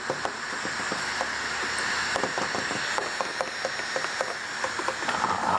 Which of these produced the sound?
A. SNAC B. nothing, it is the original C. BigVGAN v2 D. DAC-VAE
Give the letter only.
B